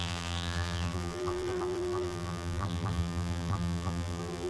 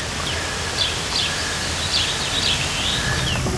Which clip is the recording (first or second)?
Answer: second